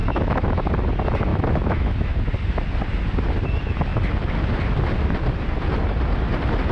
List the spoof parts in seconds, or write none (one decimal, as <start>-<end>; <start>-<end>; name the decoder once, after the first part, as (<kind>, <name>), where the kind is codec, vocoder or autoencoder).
0.0-0.7 (autoencoder, DAC-VAE); 1.3-2.2